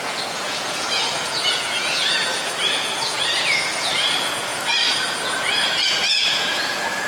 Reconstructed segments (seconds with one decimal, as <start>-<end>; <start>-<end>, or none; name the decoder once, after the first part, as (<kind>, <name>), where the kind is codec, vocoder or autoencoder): 0.0-4.5 (vocoder, Vocos); 5.0-7.1